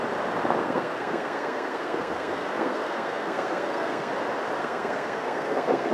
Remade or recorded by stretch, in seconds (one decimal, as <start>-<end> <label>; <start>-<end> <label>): 0.0-0.6 recorded; 0.6-4.1 remade; 4.1-4.6 recorded; 4.6-5.9 remade